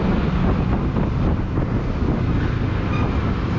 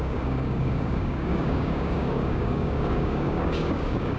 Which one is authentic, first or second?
first